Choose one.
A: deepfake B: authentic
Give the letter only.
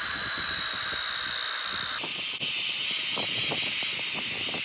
B